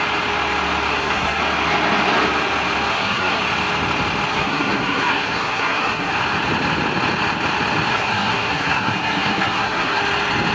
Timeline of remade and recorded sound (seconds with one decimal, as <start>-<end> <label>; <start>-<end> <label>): 0.0-0.9 recorded; 0.9-1.4 remade; 1.4-2.9 recorded; 2.9-3.4 remade; 3.4-4.3 recorded; 4.3-6.1 remade; 6.1-7.9 recorded; 7.9-10.0 remade; 10.0-10.5 recorded